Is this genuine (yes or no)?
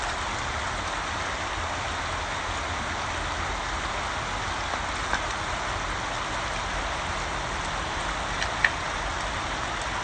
yes